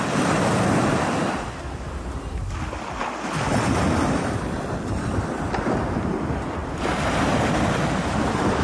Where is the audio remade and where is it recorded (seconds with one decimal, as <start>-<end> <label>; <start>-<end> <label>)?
0.0-8.6 recorded